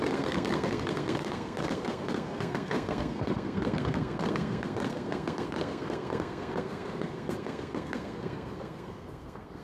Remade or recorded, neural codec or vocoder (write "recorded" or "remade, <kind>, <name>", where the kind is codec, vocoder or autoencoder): remade, codec, SNAC